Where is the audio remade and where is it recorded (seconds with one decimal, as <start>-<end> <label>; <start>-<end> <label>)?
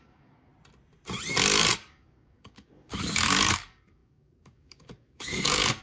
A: 0.0-0.5 remade; 0.5-1.8 recorded; 1.8-5.8 remade